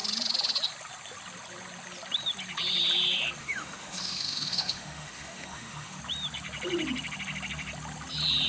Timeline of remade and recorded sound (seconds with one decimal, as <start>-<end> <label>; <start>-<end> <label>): 0.0-3.4 recorded; 3.4-6.0 remade; 6.0-8.5 recorded